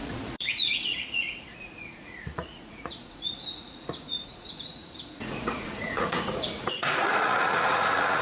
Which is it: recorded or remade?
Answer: remade